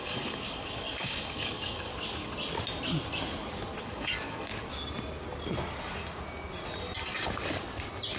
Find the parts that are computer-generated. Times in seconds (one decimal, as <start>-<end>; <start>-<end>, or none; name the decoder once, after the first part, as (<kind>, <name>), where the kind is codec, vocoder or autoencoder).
0.0-1.9 (codec, DAC); 3.8-4.5